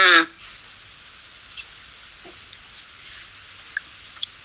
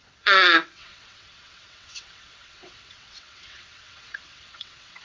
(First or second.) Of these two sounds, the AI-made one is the second